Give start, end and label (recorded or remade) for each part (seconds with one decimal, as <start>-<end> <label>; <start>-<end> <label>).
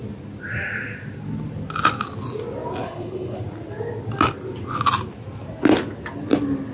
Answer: 0.0-2.8 recorded; 2.8-3.4 remade; 3.4-6.7 recorded